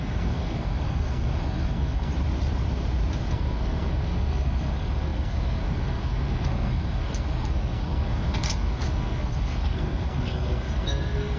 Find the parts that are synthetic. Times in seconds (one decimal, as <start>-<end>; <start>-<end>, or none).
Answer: 0.0-2.1; 3.3-11.4